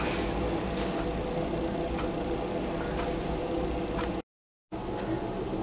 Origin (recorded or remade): recorded